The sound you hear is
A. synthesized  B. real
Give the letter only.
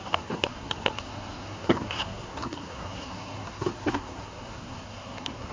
A